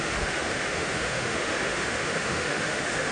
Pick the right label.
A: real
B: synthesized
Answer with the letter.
B